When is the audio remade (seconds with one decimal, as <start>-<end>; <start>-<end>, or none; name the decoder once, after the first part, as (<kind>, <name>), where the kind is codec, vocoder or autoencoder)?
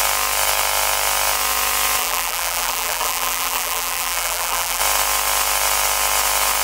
2.0-4.8 (vocoder, BigVGAN v2)